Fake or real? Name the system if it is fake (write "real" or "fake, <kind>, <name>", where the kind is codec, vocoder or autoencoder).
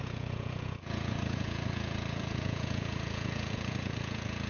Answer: fake, vocoder, Vocos